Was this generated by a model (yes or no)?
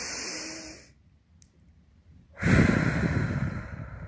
no